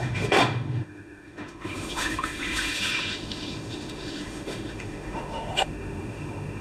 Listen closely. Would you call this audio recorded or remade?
remade